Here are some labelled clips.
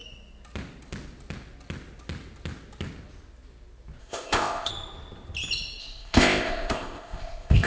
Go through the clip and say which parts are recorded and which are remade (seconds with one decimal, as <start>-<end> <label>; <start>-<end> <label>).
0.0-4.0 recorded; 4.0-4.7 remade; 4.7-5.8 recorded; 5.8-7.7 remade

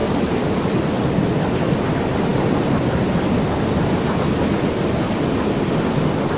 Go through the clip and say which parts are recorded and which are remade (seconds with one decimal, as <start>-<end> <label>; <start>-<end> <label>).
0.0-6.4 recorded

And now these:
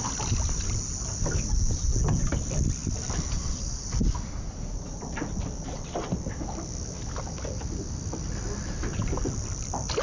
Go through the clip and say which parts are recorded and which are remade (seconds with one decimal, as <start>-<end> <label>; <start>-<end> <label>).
0.0-10.0 recorded